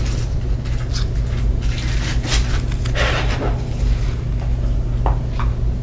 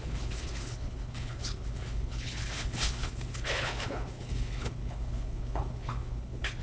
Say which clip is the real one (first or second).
first